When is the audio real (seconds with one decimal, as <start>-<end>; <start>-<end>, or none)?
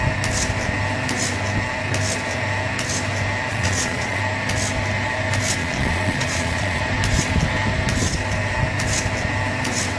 0.0-3.5; 4.2-5.6; 6.8-10.0